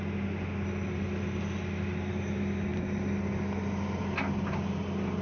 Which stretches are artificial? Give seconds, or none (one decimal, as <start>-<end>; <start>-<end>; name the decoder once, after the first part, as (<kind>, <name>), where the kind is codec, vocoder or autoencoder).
none